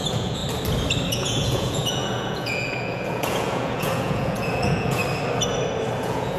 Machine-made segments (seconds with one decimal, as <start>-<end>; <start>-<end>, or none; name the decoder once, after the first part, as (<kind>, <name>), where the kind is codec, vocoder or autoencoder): 0.0-0.4 (vocoder, Vocos); 1.1-5.0; 6.0-6.4